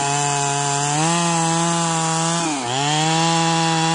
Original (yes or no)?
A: yes